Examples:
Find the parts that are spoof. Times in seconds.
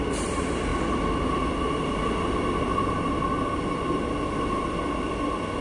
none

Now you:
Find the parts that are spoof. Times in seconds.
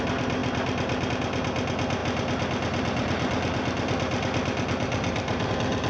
none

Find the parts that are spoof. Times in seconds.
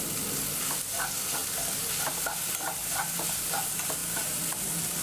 none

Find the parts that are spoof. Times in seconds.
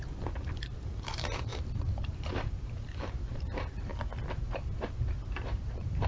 0.6-1.5 (vocoder, BigVGAN v2); 2.0-3.9; 4.5-6.1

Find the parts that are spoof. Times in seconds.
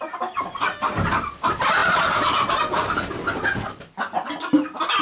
none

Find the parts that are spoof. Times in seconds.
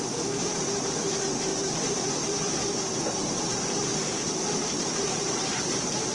0.4-0.9 (vocoder, BigVGAN v2); 1.5-2.7; 3.2-6.1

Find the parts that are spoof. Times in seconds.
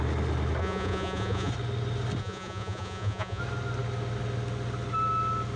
0.6-1.5 (vocoder, Vocos); 2.2-3.4